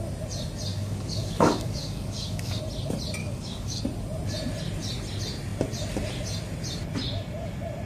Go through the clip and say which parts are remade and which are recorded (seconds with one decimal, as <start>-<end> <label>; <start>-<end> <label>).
0.0-0.7 recorded; 0.7-2.6 remade; 2.6-3.2 recorded; 3.2-3.8 remade; 3.8-7.9 recorded